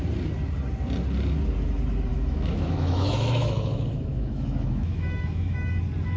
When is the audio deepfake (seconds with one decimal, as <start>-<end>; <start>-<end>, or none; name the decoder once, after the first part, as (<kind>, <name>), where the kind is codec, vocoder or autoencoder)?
2.1-5.7 (autoencoder, DAC-VAE)